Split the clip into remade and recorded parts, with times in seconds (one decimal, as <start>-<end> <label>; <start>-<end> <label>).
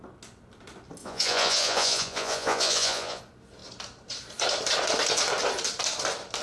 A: 0.0-1.0 recorded; 1.0-3.2 remade; 3.2-6.4 recorded